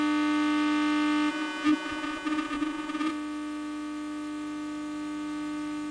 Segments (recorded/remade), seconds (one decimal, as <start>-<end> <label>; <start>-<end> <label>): 0.0-1.3 recorded; 1.3-3.1 remade; 3.1-5.9 recorded